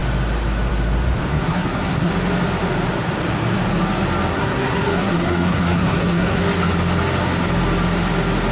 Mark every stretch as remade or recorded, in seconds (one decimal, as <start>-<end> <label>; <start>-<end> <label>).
0.0-1.3 recorded; 1.3-2.1 remade; 2.1-4.3 recorded; 4.3-6.4 remade; 6.4-8.5 recorded